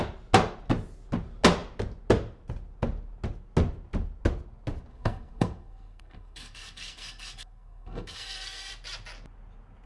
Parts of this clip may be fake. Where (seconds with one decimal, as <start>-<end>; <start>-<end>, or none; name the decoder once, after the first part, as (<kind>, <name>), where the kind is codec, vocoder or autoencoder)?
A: 4.9-8.7 (codec, SNAC)